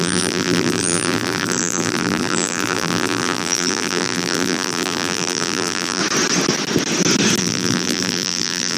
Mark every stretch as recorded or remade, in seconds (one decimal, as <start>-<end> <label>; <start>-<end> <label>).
0.0-6.0 remade; 6.0-7.4 recorded; 7.4-8.8 remade